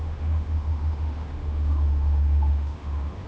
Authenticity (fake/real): fake